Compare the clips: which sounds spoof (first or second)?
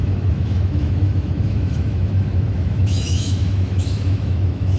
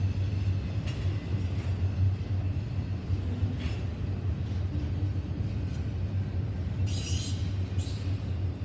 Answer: first